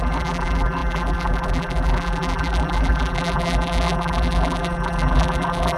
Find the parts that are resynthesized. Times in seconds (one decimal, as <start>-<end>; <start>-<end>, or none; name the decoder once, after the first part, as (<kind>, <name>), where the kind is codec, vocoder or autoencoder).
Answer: 0.0-5.8 (vocoder, BigVGAN v2)